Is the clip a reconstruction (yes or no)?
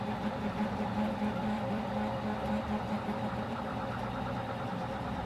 yes